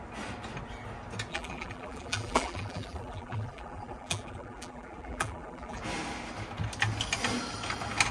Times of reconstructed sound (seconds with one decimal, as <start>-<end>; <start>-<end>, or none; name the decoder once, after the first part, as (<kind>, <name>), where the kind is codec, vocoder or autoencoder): 1.3-5.8 (vocoder, BigVGAN v2)